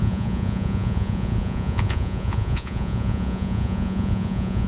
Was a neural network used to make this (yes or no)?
yes